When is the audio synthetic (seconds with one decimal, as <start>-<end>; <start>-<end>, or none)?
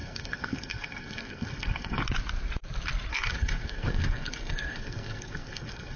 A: 0.0-2.0; 3.1-6.0